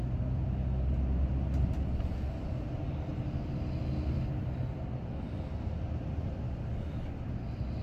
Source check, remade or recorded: recorded